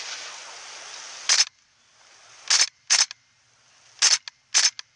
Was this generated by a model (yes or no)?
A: no